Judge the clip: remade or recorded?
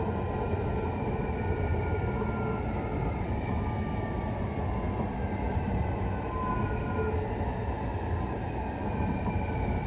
recorded